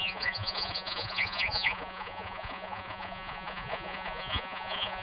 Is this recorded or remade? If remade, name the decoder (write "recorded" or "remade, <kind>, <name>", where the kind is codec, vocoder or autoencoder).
remade, vocoder, Vocos